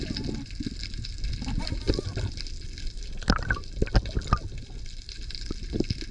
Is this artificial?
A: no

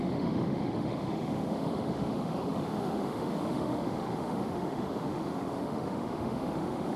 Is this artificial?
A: yes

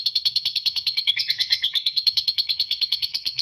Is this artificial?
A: yes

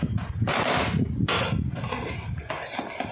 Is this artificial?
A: no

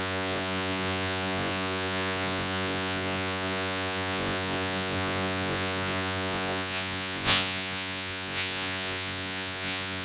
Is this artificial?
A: yes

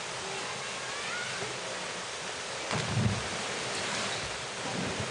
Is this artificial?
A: no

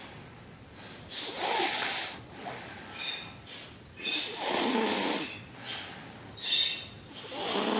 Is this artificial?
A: no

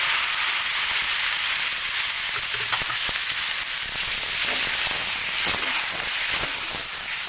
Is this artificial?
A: no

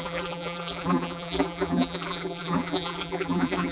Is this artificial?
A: yes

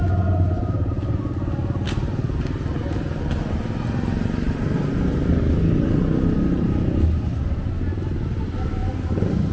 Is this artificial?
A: no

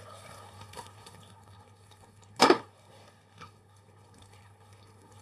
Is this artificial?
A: yes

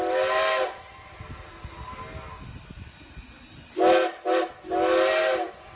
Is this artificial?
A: no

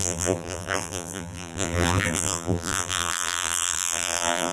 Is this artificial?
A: yes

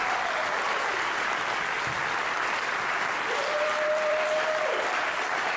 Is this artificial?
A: yes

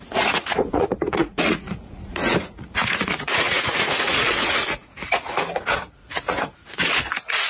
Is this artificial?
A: yes